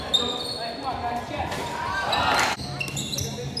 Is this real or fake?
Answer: real